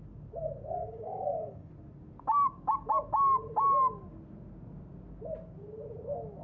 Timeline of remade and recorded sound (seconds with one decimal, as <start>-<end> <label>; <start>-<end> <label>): 0.0-0.8 recorded; 0.8-1.7 remade; 1.7-6.4 recorded